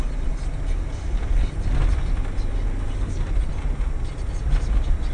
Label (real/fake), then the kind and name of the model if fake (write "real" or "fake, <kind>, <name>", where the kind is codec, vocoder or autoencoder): real